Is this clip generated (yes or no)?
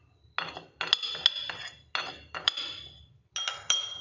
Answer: no